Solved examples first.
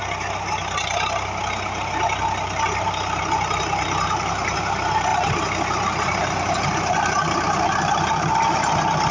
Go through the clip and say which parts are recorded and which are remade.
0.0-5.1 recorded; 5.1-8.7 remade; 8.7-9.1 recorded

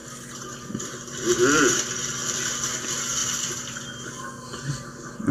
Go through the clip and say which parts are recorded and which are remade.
0.0-0.9 remade; 0.9-1.4 recorded; 1.4-2.4 remade; 2.4-3.2 recorded; 3.2-4.7 remade; 4.7-5.3 recorded

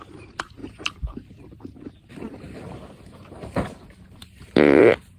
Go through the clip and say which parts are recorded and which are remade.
0.0-5.2 remade

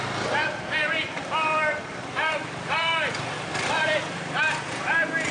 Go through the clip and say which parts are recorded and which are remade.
0.0-0.8 recorded; 0.8-4.0 remade; 4.0-5.3 recorded

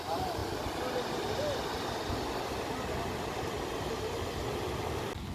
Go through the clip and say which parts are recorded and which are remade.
0.0-5.3 recorded

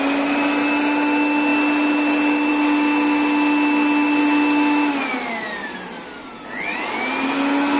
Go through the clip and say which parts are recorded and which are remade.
0.0-7.8 recorded

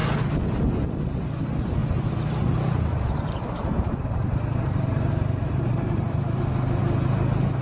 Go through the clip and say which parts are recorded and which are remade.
0.0-1.8 recorded; 1.8-6.4 remade; 6.4-7.6 recorded